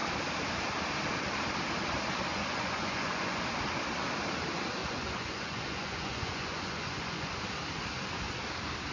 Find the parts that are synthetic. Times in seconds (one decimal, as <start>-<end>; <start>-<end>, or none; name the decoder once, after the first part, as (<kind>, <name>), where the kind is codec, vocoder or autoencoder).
2.3-3.4 (vocoder, Vocos); 4.8-7.3